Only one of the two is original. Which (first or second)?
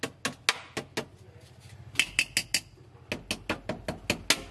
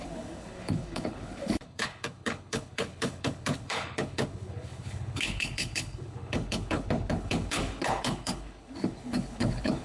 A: first